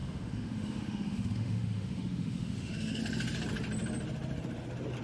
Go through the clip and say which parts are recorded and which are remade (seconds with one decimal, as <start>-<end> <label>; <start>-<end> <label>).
0.0-3.0 remade; 3.0-5.0 recorded